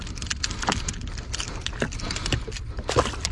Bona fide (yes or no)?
yes